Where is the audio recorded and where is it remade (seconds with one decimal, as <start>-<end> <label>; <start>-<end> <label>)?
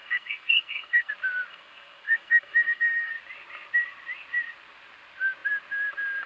0.0-1.1 remade; 1.1-1.5 recorded; 1.5-3.1 remade; 3.1-6.3 recorded